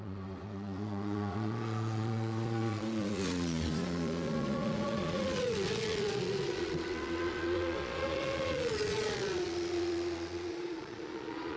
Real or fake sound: fake